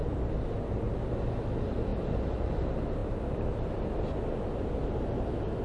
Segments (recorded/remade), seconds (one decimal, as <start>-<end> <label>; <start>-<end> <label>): 0.0-0.5 remade; 0.5-5.6 recorded